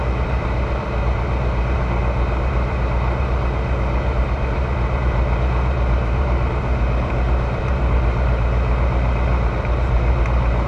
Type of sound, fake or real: fake